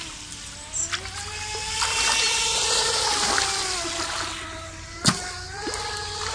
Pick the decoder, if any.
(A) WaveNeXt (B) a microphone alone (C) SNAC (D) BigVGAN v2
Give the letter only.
B